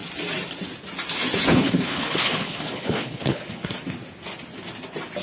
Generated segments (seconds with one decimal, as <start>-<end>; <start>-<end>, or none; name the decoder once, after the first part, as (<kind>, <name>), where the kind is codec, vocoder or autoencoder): 1.5-3.7 (codec, HILCodec)

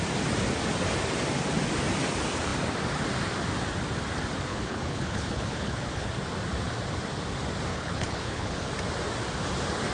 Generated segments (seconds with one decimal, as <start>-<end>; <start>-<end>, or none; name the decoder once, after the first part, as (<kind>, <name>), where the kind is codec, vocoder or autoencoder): 4.5-6.1 (codec, HILCodec); 7.7-8.7

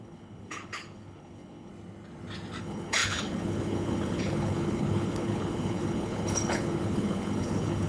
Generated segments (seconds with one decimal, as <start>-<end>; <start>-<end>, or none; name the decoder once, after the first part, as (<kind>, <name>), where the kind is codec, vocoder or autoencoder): 0.0-1.7 (codec, HILCodec); 2.6-7.9

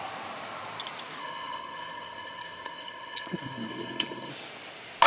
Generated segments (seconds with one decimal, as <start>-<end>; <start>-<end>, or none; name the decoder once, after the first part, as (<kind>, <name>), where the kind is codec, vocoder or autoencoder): 1.2-4.3 (codec, HILCodec)

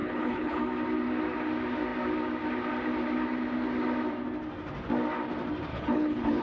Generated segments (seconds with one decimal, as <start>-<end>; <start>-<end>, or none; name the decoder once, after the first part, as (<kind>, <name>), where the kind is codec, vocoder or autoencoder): 0.0-0.6 (codec, HILCodec); 5.7-6.4

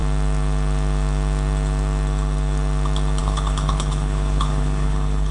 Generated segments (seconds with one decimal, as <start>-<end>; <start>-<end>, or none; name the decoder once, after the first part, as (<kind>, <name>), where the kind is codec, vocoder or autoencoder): 3.2-5.3 (codec, HILCodec)

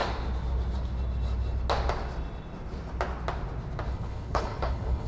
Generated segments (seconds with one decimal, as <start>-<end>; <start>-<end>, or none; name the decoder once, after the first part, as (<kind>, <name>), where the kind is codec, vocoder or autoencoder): 3.9-5.1 (codec, HILCodec)

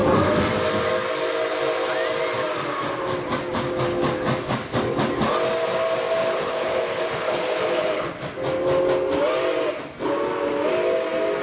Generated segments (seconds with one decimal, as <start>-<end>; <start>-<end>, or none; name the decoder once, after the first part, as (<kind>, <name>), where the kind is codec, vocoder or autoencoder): 6.2-8.2 (codec, HILCodec)